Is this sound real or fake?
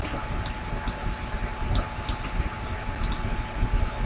real